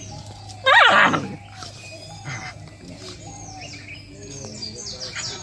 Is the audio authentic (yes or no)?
yes